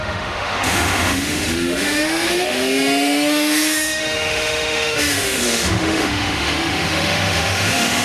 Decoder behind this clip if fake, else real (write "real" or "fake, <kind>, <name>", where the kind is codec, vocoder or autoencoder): fake, autoencoder, DAC-VAE